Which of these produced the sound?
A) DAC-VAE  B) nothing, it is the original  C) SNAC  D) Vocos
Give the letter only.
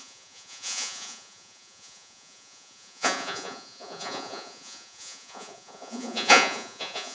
D